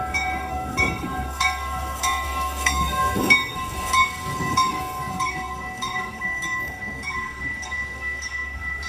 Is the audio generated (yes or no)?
yes